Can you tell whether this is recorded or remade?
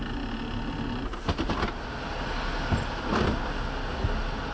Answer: recorded